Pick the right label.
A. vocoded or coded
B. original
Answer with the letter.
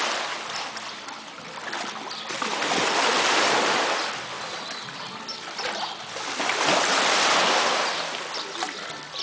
B